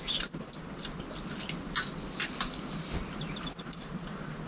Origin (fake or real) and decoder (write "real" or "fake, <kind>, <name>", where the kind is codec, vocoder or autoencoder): real